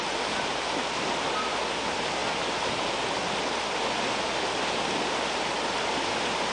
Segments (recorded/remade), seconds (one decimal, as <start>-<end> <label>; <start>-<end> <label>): 0.0-6.5 recorded

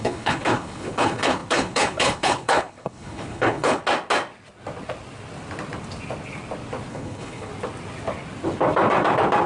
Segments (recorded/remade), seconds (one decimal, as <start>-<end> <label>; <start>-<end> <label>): 0.0-3.8 remade; 3.8-6.9 recorded; 6.9-7.5 remade; 7.5-9.5 recorded

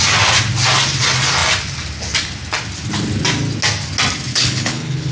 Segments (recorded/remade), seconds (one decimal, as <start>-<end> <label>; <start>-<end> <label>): 0.0-4.3 recorded; 4.3-5.1 remade

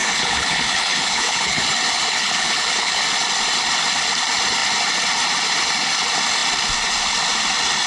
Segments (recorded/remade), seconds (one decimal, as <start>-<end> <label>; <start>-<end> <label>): 0.0-1.6 remade; 1.6-2.1 recorded; 2.1-3.0 remade; 3.0-7.9 recorded

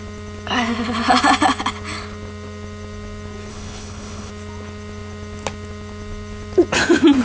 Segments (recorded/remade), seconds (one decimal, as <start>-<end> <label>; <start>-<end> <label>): 0.0-3.5 recorded; 3.5-4.3 remade; 4.3-7.2 recorded

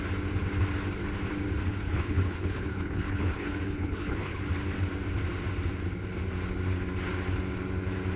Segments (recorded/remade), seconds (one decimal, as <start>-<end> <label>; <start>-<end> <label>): 0.0-1.6 recorded; 1.6-4.4 remade; 4.4-8.2 recorded